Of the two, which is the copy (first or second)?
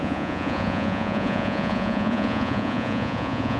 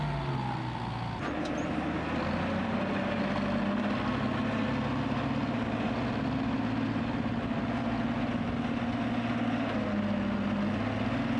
first